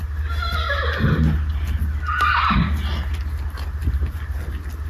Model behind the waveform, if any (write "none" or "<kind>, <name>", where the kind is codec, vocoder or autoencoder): none